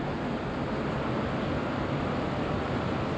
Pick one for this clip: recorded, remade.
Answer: recorded